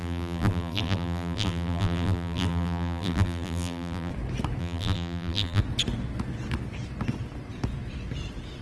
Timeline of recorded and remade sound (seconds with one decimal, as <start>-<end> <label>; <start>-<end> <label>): 0.0-4.1 remade; 4.1-4.6 recorded; 4.6-5.6 remade; 5.6-8.6 recorded